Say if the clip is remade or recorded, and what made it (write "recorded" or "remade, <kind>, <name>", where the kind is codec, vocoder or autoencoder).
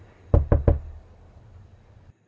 recorded